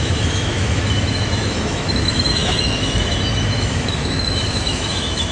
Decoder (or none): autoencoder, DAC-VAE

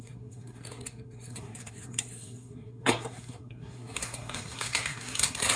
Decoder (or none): codec, SNAC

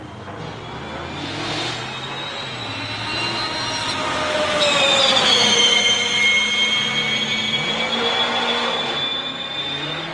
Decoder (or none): none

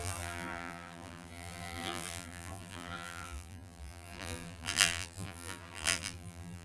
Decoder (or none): vocoder, BigVGAN v2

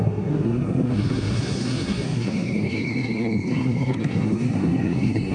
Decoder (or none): codec, SNAC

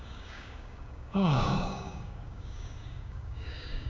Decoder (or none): codec, DAC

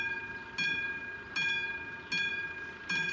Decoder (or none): none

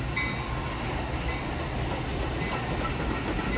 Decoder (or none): none